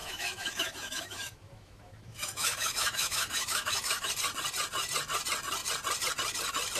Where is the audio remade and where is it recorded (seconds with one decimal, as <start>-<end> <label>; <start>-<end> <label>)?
0.0-4.1 remade; 4.1-6.8 recorded